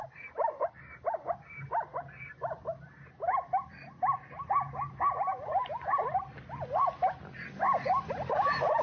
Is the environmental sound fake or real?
real